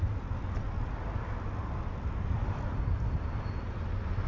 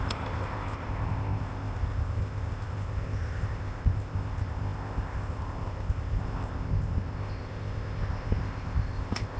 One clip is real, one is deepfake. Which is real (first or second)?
first